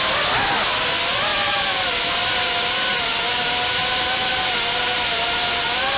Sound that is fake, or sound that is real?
real